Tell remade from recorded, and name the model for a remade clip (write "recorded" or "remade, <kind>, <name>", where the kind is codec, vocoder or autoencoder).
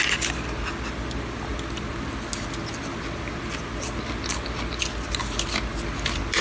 recorded